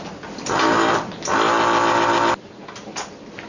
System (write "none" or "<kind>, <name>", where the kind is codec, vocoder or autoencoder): none